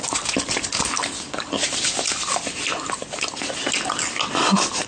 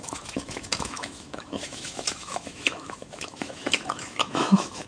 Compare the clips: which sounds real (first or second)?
first